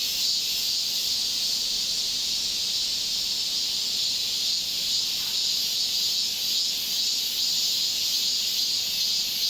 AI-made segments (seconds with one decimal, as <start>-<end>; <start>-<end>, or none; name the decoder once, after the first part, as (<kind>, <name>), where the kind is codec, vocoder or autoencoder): none

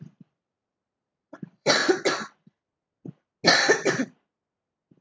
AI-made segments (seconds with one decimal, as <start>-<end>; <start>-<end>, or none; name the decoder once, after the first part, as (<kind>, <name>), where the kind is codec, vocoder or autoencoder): 0.0-1.8 (vocoder, BigVGAN v2)